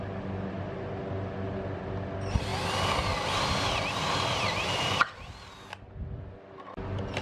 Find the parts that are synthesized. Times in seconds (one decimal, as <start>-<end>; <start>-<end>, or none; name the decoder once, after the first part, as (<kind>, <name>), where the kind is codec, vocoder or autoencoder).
2.5-5.1 (vocoder, BigVGAN v2)

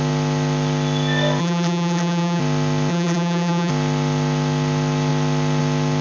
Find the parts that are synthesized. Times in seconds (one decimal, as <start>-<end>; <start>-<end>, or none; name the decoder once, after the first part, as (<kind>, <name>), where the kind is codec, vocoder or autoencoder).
1.4-2.4 (vocoder, BigVGAN v2); 2.9-3.7

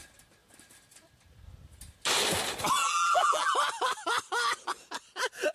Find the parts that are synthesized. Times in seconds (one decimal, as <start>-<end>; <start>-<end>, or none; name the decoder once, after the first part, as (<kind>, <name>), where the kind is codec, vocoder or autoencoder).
2.8-3.5 (vocoder, BigVGAN v2)

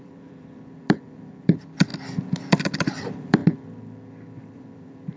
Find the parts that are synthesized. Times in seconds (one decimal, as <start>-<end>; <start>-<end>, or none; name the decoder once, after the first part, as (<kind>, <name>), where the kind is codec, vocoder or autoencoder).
0.0-1.9 (vocoder, BigVGAN v2); 2.4-3.4; 4.4-5.2

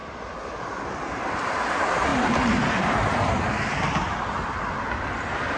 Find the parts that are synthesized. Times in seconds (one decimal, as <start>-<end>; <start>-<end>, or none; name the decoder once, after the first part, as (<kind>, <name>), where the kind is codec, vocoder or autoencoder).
0.8-2.1 (vocoder, BigVGAN v2); 2.8-5.6

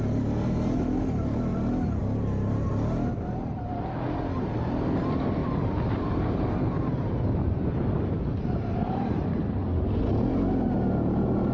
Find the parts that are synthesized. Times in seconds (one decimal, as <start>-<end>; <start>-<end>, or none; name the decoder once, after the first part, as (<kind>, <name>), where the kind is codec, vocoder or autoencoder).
5.4-9.4 (vocoder, BigVGAN v2)

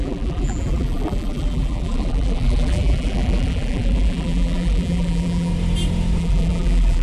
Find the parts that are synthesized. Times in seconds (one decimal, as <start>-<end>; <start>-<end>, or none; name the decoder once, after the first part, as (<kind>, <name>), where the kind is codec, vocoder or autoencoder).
0.0-5.5 (vocoder, BigVGAN v2); 6.2-7.0

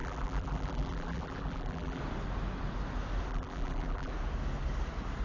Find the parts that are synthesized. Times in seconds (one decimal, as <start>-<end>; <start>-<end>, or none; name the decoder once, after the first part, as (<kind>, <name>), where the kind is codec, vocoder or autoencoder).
0.0-2.0 (vocoder, BigVGAN v2); 3.3-4.1